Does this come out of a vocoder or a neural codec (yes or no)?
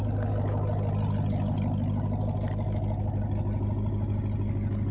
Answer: no